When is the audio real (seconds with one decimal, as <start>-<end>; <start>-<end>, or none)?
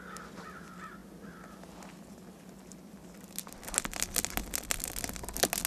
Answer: 0.0-5.7